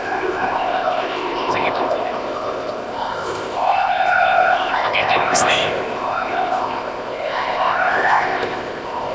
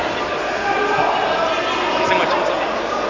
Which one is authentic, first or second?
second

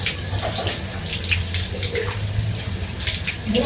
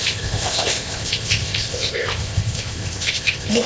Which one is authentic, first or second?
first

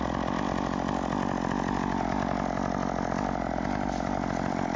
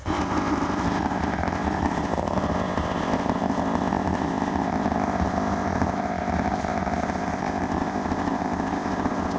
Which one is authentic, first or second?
first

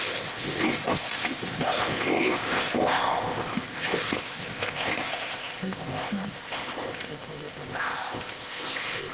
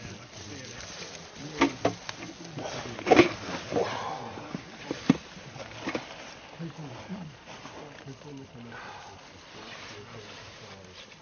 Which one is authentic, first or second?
second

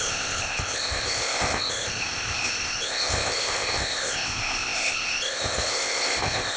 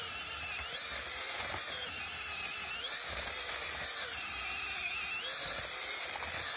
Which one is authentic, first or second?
second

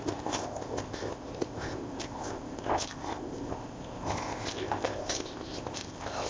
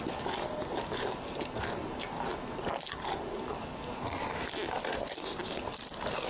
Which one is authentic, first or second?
second